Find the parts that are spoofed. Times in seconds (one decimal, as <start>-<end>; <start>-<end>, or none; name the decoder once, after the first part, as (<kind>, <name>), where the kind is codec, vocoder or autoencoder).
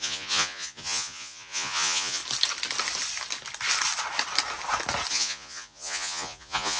0.0-2.2 (vocoder, Vocos); 5.1-6.8